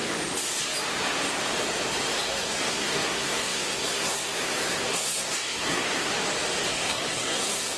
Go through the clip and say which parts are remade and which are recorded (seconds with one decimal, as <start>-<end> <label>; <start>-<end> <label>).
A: 0.0-2.3 recorded; 2.3-6.1 remade; 6.1-6.7 recorded; 6.7-7.8 remade